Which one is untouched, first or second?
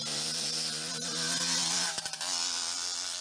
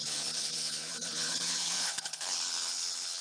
first